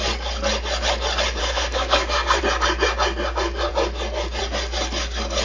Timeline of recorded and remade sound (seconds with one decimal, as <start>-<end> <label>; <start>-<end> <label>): 0.0-1.4 recorded; 1.4-2.4 remade; 2.4-5.4 recorded